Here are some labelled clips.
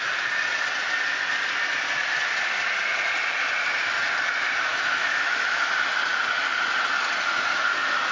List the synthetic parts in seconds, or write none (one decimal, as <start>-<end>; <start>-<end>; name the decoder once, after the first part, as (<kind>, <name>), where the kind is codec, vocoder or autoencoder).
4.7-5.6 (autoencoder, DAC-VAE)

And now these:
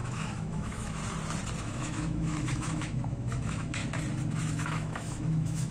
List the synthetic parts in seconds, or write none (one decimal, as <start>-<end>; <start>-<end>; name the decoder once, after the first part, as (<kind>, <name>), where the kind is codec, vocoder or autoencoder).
0.0-1.0 (autoencoder, DAC-VAE); 1.6-3.8; 4.4-5.7

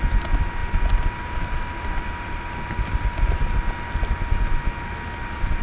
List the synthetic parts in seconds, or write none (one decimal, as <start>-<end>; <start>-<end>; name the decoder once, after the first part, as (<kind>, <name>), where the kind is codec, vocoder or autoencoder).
none

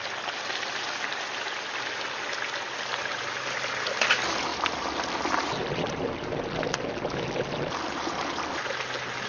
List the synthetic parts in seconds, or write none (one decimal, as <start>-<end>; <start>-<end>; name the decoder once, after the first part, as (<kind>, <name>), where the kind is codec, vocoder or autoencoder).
none